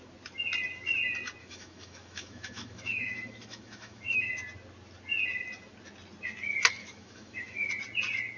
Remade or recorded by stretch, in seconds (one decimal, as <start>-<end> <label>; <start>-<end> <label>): 0.0-1.4 recorded; 1.4-4.3 remade; 4.3-6.8 recorded; 6.8-7.7 remade; 7.7-8.4 recorded